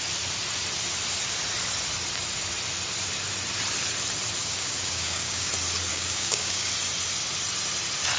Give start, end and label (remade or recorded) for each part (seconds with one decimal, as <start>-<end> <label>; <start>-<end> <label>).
0.0-4.4 recorded; 4.4-5.5 remade; 5.5-5.9 recorded; 5.9-6.7 remade; 6.7-8.2 recorded